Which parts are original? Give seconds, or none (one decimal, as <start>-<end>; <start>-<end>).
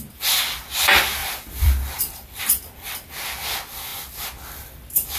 0.0-1.2; 2.4-5.2